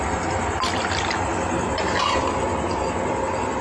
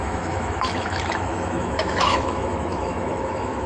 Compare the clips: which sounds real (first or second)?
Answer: first